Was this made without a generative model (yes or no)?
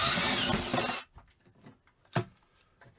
yes